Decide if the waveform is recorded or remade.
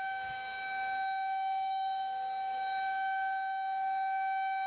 remade